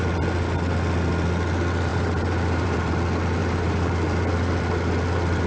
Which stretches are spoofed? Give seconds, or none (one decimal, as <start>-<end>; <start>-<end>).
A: 1.9-2.9; 3.4-3.9